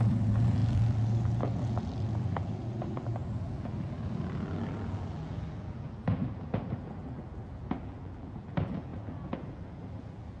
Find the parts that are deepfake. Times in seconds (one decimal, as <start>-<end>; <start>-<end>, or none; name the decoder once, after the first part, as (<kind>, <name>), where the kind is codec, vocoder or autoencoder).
0.0-10.4 (vocoder, BigVGAN v2)